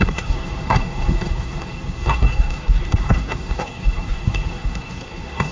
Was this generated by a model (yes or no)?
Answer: yes